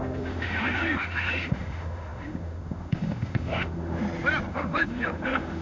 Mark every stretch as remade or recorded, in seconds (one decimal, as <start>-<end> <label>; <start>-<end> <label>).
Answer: 0.0-4.0 remade; 4.0-4.5 recorded; 4.5-5.6 remade